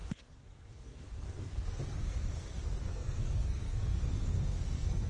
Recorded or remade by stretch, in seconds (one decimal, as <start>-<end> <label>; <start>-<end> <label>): 0.0-5.1 remade